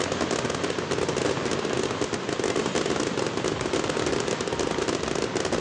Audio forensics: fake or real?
real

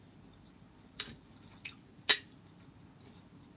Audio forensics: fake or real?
real